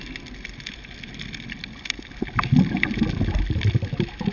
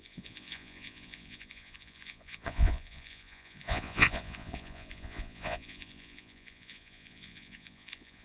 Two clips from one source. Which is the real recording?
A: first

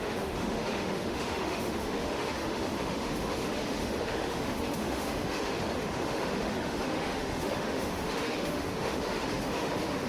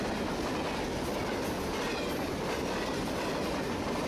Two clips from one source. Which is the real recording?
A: second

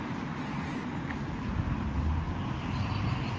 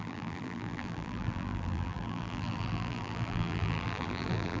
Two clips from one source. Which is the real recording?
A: first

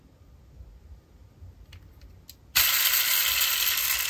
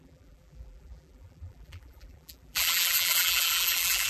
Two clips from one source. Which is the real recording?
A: first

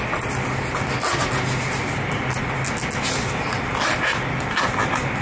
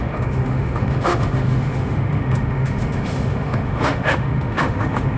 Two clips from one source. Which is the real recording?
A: first